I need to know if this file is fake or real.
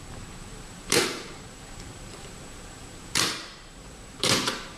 fake